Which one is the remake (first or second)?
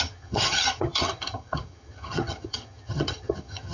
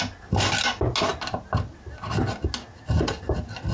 first